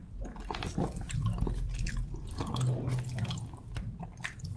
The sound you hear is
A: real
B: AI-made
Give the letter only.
A